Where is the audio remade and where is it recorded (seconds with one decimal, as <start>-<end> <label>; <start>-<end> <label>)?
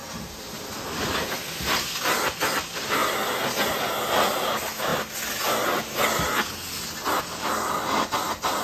0.0-8.6 recorded